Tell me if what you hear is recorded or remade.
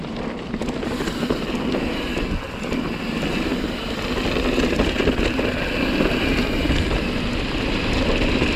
recorded